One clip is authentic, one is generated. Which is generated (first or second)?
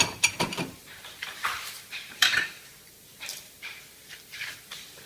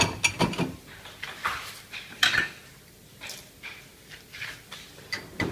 first